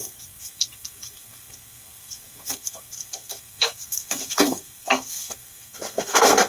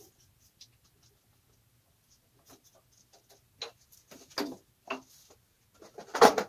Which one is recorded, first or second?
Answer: second